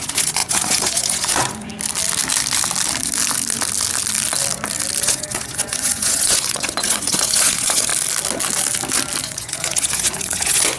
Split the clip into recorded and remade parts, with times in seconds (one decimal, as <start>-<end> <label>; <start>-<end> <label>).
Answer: 0.0-1.7 remade; 1.7-5.0 recorded; 5.0-7.9 remade; 7.9-9.2 recorded; 9.2-10.8 remade